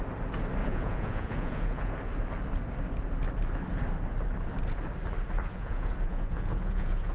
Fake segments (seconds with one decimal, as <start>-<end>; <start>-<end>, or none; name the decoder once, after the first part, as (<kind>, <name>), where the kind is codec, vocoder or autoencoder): 0.6-1.9 (vocoder, Vocos); 5.5-7.1